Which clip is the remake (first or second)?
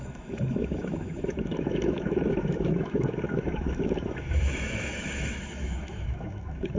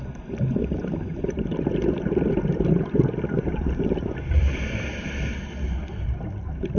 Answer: first